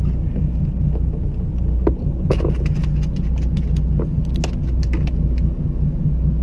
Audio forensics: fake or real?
real